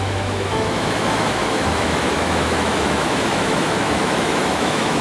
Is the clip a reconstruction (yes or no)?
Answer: yes